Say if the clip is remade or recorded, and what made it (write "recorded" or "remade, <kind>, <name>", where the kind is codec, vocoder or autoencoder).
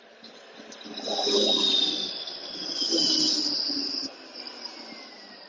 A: recorded